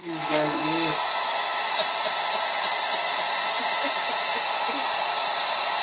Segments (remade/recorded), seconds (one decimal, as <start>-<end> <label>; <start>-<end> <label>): 0.0-1.1 remade; 1.1-5.8 recorded